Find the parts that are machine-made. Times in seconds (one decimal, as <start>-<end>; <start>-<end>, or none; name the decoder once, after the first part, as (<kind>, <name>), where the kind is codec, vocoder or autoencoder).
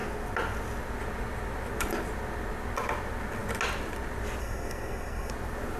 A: 4.4-5.3 (codec, SNAC)